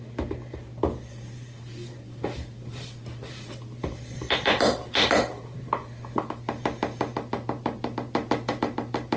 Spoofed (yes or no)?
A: no